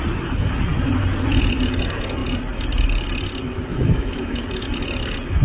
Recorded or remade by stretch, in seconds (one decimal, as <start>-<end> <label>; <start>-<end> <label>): 0.0-3.7 recorded; 3.7-4.4 remade; 4.4-5.4 recorded